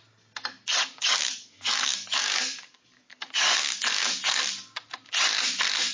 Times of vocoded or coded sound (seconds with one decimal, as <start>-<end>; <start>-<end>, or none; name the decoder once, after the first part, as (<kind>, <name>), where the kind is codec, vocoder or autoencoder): 0.9-4.4 (codec, DAC)